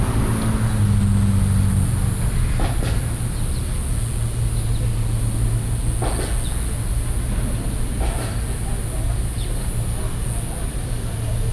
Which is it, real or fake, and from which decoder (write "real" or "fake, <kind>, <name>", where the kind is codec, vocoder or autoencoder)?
real